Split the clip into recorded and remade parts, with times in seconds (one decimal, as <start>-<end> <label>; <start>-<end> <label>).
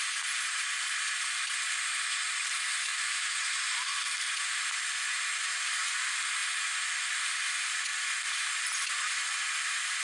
0.0-2.9 recorded; 2.9-3.6 remade; 3.6-10.0 recorded